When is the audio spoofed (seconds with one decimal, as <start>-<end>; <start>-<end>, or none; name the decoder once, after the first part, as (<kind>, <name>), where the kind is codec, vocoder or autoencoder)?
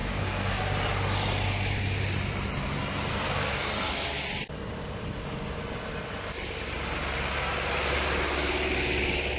0.0-0.6 (codec, SNAC); 3.1-3.7